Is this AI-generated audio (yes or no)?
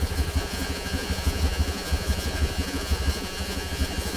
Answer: yes